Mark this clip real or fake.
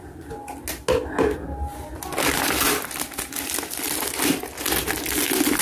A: real